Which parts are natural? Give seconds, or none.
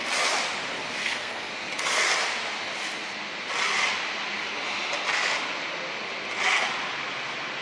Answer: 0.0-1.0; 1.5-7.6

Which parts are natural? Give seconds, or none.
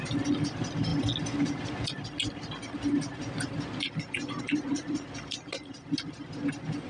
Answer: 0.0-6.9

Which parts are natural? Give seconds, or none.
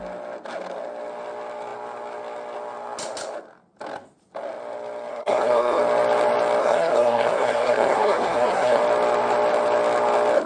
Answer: 0.0-5.1; 5.8-6.6; 8.8-10.5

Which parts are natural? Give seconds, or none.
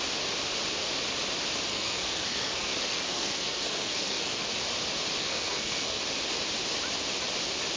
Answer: 0.0-1.7; 4.5-5.2; 6.0-7.8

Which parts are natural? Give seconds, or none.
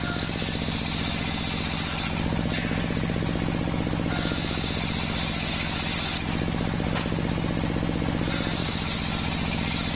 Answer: 0.0-10.0